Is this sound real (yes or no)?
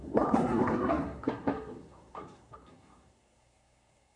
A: no